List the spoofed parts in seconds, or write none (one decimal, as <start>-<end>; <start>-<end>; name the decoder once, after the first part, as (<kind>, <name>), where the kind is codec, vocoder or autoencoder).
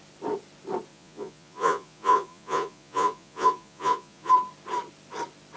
0.9-4.3 (vocoder, Vocos)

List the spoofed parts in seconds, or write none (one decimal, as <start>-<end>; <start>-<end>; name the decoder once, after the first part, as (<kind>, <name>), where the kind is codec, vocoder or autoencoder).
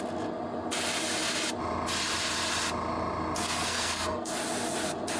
3.4-4.4 (codec, SNAC)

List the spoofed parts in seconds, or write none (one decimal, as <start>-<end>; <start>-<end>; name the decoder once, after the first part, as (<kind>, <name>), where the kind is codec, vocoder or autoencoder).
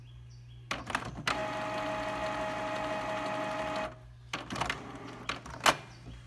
none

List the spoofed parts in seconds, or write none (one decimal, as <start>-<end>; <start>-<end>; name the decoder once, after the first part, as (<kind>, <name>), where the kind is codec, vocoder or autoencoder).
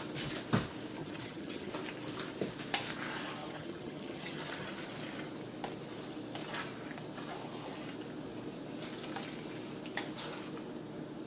1.0-1.7 (vocoder, HiFi-GAN); 3.4-4.8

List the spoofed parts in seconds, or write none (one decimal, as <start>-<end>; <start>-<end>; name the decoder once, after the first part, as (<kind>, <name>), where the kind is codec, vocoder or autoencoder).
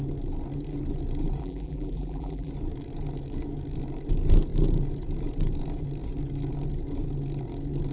1.4-2.5 (vocoder, BigVGAN v2)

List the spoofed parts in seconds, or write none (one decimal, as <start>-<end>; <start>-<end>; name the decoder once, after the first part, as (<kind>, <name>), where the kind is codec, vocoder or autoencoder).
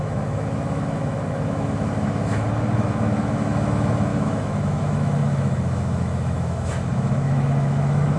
0.0-8.2 (autoencoder, DAC-VAE)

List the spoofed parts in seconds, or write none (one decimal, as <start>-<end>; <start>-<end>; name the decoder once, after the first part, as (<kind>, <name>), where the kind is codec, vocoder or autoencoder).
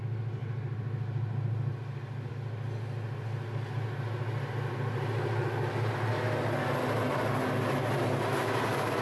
none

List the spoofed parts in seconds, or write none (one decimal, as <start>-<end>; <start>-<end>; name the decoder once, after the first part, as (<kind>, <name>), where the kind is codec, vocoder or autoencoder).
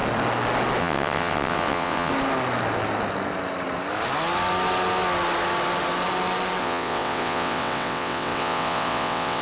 0.8-2.1 (vocoder, WaveNeXt); 6.6-9.4